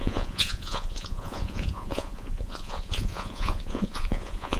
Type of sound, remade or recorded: remade